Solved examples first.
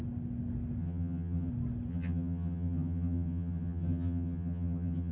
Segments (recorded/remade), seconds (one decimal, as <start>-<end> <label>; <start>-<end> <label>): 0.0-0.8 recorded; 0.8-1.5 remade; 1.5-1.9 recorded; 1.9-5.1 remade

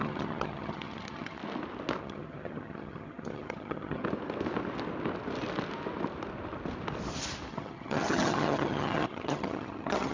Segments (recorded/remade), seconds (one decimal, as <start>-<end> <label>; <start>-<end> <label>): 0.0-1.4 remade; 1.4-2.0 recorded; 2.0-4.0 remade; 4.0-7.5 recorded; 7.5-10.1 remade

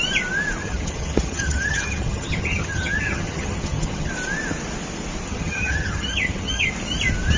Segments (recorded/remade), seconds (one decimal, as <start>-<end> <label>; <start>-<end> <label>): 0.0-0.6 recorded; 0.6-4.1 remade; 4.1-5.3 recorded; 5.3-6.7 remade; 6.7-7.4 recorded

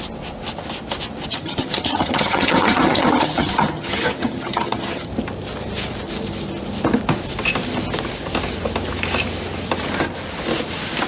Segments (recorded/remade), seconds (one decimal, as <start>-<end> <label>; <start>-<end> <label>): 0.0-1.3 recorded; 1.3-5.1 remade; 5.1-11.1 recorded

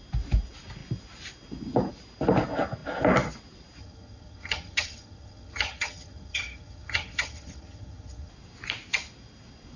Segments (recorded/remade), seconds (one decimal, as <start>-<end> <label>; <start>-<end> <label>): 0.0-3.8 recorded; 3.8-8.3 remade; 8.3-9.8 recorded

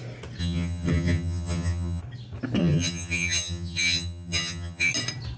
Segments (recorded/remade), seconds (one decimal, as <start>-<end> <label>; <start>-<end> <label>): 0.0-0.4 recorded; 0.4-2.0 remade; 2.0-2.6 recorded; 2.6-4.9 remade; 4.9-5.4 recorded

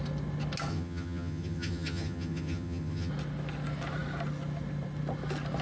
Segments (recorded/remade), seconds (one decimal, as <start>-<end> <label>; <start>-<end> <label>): 0.0-0.7 recorded; 0.7-3.1 remade; 3.1-5.6 recorded